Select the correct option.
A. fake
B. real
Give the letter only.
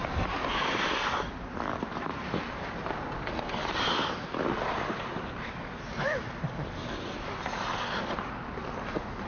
B